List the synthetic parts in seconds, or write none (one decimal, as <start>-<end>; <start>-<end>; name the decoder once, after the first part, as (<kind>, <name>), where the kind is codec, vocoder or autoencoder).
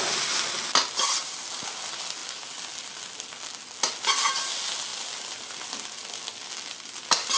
none